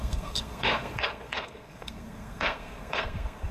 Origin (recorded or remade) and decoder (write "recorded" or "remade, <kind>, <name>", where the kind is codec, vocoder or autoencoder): remade, codec, SNAC